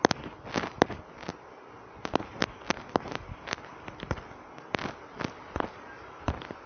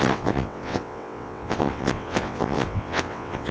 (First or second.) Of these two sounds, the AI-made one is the second